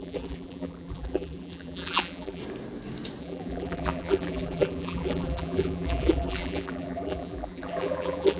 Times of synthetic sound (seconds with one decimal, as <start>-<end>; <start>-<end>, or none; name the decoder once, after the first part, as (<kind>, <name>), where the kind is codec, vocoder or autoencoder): 0.0-2.4 (vocoder, BigVGAN v2); 3.2-8.4